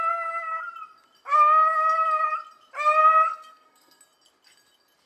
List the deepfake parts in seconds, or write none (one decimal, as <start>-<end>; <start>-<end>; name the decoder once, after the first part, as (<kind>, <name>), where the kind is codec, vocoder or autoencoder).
3.0-4.0 (codec, SNAC)